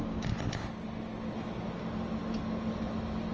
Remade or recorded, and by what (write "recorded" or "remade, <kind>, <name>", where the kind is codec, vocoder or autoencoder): recorded